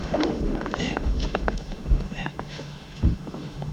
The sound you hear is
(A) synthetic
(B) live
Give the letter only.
A